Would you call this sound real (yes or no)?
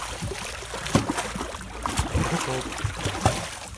yes